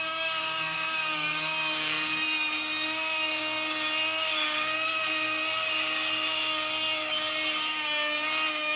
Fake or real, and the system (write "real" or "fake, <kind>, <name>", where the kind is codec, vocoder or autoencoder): fake, codec, DAC